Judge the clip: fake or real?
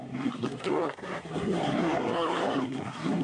fake